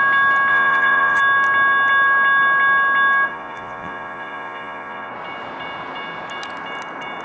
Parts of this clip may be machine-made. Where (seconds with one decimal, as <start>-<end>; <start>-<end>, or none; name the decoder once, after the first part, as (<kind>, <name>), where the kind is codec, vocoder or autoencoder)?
0.5-1.2 (vocoder, Vocos); 3.3-5.1